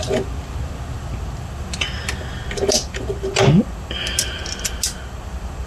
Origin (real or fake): real